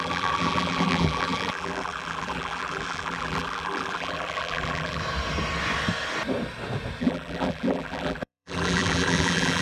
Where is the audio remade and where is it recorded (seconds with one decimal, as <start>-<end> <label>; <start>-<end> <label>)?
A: 0.0-5.0 remade; 5.0-7.0 recorded; 7.0-9.6 remade